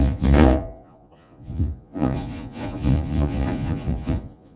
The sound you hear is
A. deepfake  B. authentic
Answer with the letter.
A